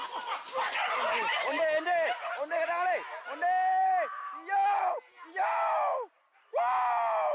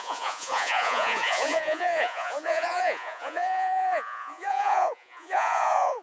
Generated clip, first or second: second